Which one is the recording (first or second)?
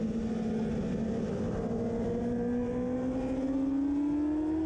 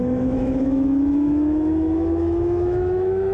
first